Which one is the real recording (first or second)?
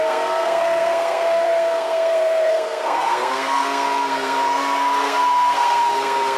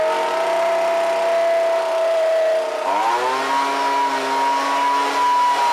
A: second